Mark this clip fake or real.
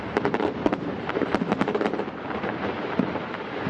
fake